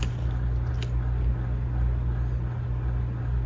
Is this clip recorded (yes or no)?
yes